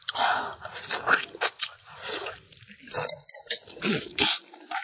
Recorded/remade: recorded